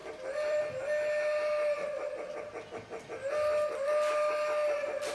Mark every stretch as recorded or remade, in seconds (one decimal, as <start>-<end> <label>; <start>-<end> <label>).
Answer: 0.0-0.6 remade; 0.6-5.1 recorded